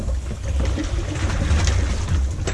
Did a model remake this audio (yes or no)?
no